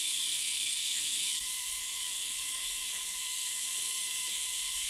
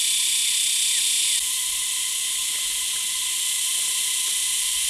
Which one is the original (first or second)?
second